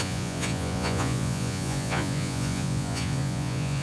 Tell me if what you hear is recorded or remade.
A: remade